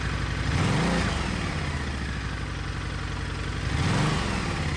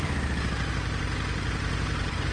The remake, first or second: second